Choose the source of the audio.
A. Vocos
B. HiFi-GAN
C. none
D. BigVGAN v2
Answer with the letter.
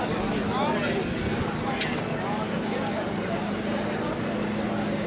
C